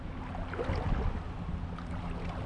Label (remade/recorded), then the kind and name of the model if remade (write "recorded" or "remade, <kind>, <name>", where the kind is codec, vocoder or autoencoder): recorded